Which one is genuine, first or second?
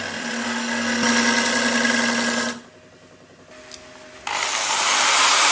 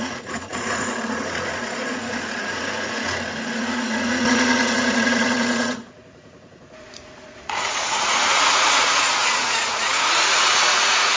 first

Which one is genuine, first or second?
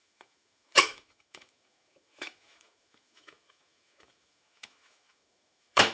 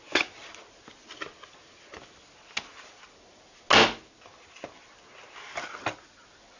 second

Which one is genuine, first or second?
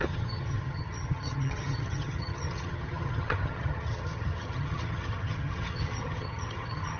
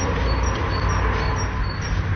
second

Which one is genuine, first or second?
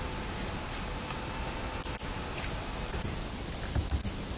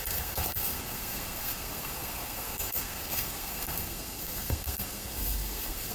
first